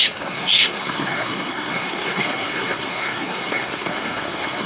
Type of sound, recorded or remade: remade